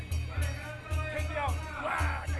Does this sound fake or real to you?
real